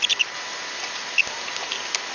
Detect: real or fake real